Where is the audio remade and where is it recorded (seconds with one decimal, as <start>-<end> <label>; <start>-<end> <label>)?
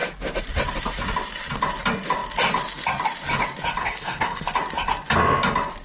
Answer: 0.0-3.8 recorded; 3.8-4.5 remade; 4.5-5.8 recorded